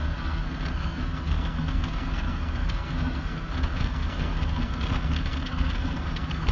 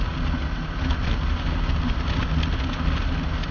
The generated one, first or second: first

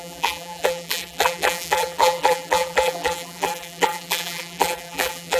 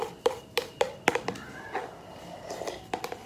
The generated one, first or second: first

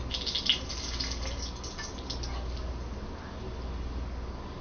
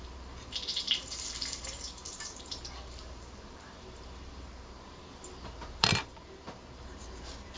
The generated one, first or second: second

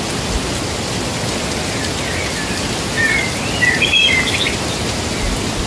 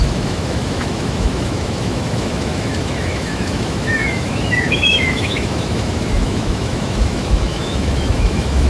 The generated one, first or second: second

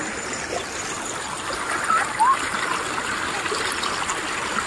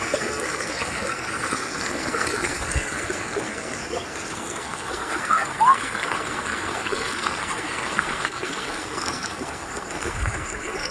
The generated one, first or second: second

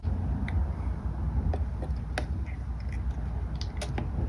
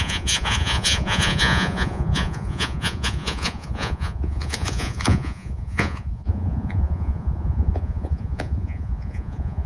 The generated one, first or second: second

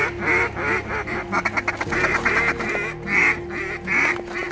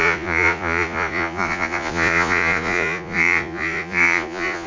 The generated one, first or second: second